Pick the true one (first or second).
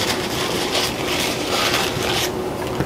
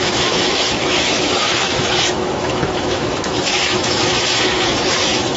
first